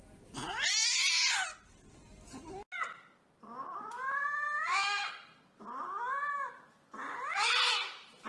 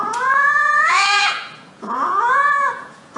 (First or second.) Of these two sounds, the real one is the first